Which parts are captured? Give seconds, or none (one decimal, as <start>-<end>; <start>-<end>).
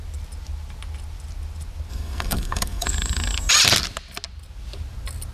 0.0-1.9; 3.5-5.3